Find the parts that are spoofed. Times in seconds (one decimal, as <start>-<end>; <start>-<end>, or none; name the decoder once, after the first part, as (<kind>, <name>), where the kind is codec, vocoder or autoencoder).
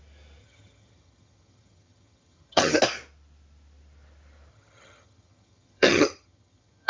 0.4-2.8 (vocoder, HiFi-GAN); 4.5-6.9